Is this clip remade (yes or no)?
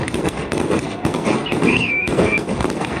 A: yes